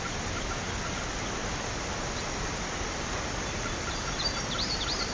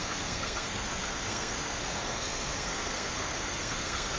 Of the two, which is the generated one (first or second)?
second